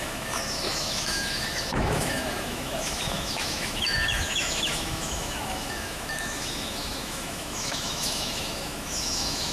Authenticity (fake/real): fake